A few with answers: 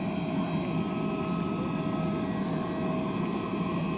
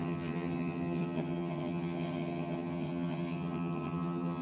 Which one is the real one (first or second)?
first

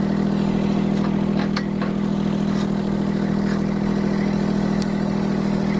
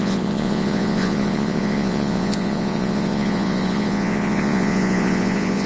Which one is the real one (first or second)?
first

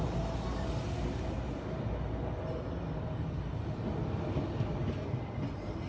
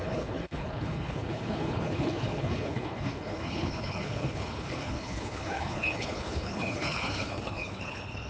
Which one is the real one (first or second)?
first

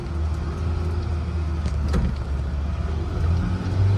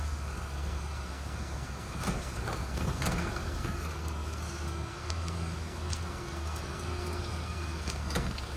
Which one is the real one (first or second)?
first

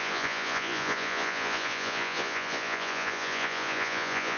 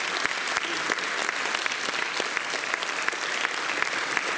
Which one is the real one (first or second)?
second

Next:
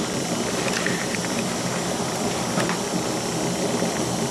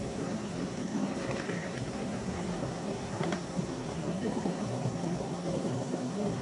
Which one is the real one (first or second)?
first